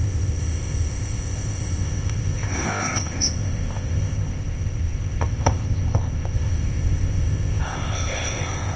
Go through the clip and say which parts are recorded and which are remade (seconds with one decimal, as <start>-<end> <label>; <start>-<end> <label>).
0.0-8.8 remade